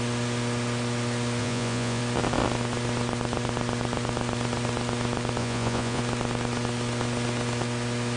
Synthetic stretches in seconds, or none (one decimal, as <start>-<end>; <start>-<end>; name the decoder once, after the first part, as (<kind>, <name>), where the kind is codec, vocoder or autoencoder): 1.4-2.0 (vocoder, Vocos); 5.4-6.0

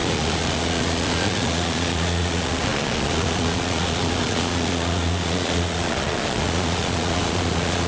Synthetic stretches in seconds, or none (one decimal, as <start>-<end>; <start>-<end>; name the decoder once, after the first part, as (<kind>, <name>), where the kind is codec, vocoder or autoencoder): 0.0-7.9 (vocoder, Vocos)

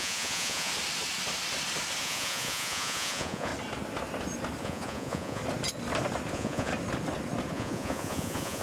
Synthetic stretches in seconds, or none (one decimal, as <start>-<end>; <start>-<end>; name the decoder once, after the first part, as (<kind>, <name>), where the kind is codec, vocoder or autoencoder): 0.0-0.7 (vocoder, Vocos); 2.0-3.5; 4.6-5.4; 6.3-6.7; 7.5-8.6

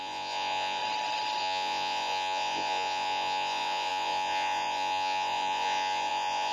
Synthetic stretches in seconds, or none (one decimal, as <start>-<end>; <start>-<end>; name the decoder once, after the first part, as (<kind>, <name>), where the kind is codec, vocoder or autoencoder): 0.0-0.8 (vocoder, Vocos); 1.4-6.5

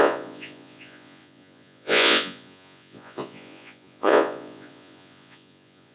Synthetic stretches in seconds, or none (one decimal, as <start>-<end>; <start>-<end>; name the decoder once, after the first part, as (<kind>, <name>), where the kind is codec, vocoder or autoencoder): 0.0-5.9 (vocoder, Vocos)

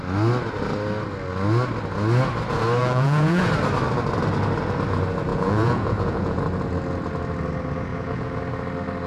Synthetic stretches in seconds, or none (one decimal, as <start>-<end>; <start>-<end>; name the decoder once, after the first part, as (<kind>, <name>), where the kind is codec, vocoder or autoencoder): 2.8-3.5 (vocoder, Vocos); 5.3-6.4; 7.9-8.4